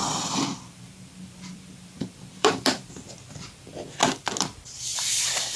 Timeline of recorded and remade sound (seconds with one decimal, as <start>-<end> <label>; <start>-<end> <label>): 0.0-3.7 remade; 3.7-4.4 recorded; 4.4-5.6 remade